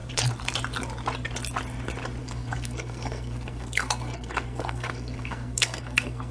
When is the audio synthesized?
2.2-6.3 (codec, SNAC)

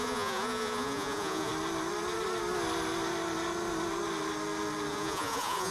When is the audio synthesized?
0.0-1.5 (vocoder, Vocos); 4.9-5.7